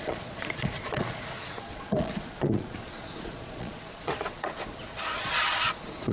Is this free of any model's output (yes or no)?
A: no